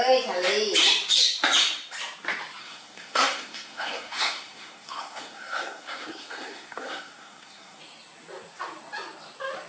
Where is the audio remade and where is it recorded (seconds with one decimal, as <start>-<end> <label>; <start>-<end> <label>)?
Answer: 0.0-2.6 recorded; 2.6-7.8 remade; 7.8-9.7 recorded